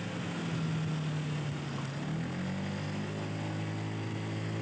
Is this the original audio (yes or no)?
yes